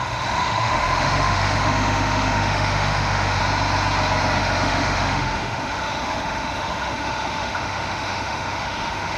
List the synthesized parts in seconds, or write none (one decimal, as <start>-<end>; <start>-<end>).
0.0-3.4; 4.4-9.2